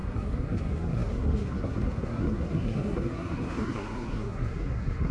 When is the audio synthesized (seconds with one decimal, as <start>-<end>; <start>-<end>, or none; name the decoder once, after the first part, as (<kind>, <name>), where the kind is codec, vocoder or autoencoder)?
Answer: 0.0-5.1 (codec, SNAC)